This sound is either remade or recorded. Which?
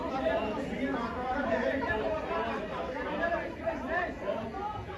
remade